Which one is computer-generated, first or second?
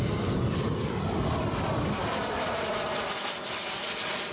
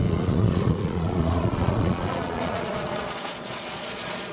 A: second